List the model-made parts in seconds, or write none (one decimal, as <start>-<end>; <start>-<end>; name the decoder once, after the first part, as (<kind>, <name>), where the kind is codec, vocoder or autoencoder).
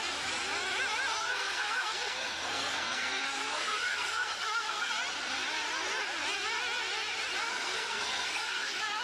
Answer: 1.2-4.9 (codec, SNAC); 7.5-9.0